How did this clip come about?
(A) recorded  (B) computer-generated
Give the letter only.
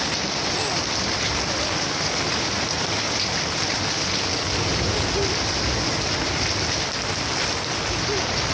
A